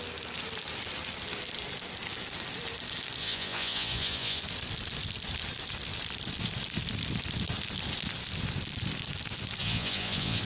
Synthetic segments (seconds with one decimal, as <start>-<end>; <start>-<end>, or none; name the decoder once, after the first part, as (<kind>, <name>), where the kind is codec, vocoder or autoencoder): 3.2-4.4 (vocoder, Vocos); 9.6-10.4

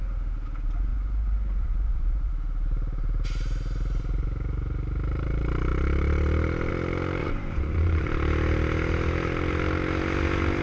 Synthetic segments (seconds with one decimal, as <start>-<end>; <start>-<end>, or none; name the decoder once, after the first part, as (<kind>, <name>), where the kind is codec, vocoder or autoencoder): 0.9-2.3 (vocoder, Vocos); 7.2-8.1

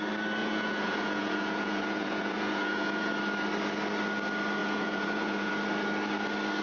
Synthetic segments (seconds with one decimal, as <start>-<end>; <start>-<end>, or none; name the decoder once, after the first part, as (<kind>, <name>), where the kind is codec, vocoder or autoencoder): 0.4-3.1 (vocoder, Vocos); 4.6-5.5